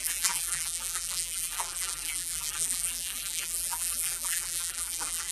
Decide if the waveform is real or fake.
fake